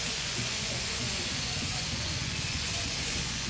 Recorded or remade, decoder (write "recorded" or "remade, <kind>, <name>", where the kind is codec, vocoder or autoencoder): remade, vocoder, Vocos